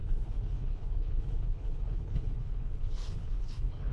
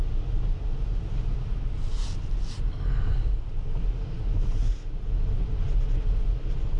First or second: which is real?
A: second